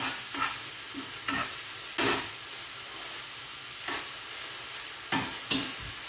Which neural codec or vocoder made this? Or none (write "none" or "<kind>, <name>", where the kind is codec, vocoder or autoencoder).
none